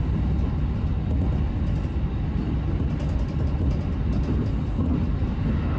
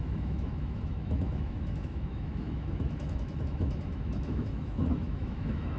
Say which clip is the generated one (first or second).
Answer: second